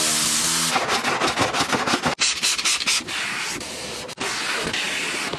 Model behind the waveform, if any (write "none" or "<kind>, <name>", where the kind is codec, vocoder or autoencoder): none